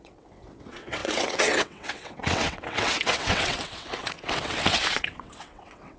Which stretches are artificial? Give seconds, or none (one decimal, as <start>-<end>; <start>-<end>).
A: 0.0-6.0